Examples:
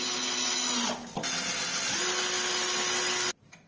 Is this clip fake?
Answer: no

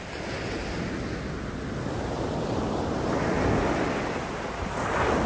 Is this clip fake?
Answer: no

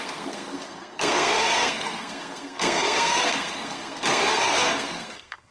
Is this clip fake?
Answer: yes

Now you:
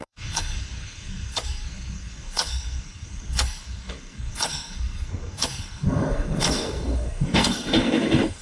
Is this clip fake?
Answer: yes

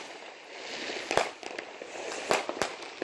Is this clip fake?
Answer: no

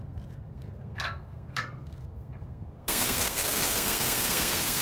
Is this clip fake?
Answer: yes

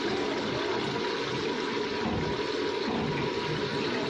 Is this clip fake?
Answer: no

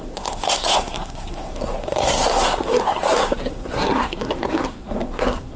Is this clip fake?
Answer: yes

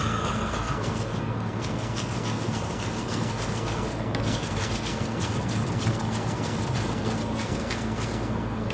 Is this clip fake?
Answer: yes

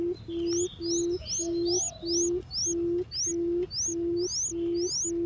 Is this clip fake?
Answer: no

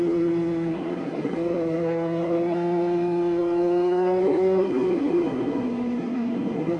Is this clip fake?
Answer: yes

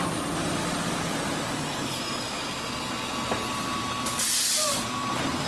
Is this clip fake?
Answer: no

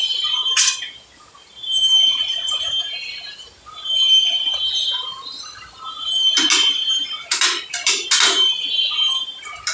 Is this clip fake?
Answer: no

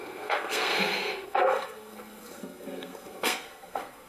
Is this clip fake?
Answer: yes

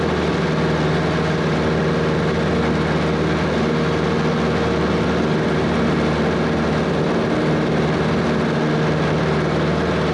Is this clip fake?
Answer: no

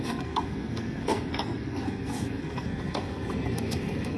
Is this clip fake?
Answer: yes